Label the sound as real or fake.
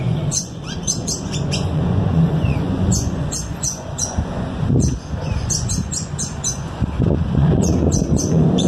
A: fake